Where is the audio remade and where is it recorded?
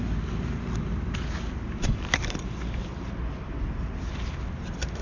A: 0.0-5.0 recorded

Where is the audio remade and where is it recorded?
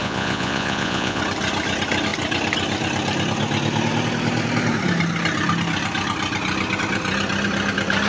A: 0.0-1.2 remade; 1.2-8.1 recorded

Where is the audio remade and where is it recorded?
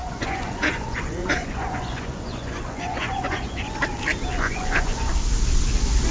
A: 0.0-3.7 remade; 3.7-4.3 recorded; 4.3-5.1 remade; 5.1-6.1 recorded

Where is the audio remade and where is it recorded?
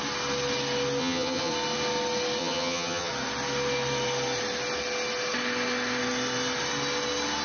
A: 0.0-1.0 recorded; 1.0-1.5 remade; 1.5-2.4 recorded; 2.4-3.1 remade; 3.1-7.4 recorded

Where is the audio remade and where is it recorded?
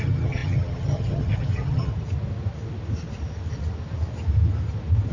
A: 0.0-1.9 remade; 1.9-5.1 recorded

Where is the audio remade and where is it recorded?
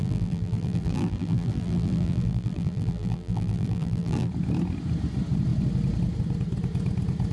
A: 0.0-4.3 remade; 4.3-7.3 recorded